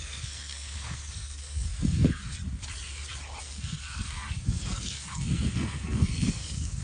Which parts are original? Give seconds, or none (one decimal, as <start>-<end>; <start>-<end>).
2.4-3.4